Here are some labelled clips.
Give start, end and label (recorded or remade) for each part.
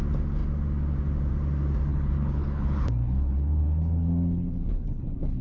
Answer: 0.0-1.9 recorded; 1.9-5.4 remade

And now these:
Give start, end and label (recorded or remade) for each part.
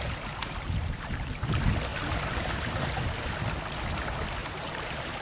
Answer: 0.0-0.4 recorded; 0.4-1.3 remade; 1.3-1.9 recorded; 1.9-2.7 remade; 2.7-4.4 recorded; 4.4-5.2 remade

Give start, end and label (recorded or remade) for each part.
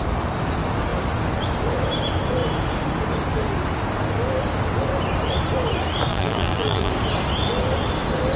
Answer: 0.0-6.1 recorded; 6.1-6.9 remade; 6.9-8.4 recorded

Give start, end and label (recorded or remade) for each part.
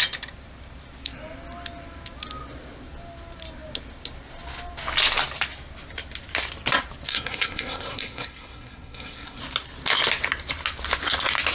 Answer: 0.0-7.1 recorded; 7.1-9.4 remade; 9.4-11.5 recorded